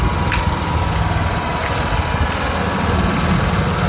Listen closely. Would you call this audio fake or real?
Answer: real